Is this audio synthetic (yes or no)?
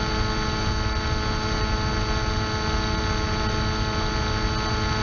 no